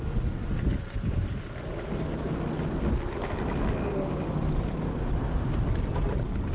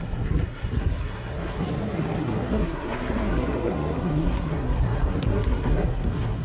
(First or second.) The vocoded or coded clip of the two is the second